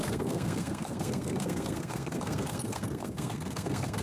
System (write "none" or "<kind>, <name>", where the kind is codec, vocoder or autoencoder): codec, SNAC